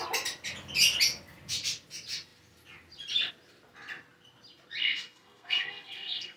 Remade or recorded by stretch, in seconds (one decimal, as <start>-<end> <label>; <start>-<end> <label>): 0.0-4.8 recorded; 4.8-6.4 remade